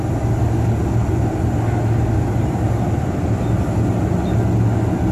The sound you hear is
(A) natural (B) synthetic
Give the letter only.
A